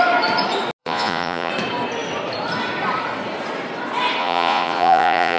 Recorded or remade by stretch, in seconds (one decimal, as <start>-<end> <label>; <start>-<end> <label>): 0.0-0.8 recorded; 0.8-1.5 remade; 1.5-4.2 recorded; 4.2-5.4 remade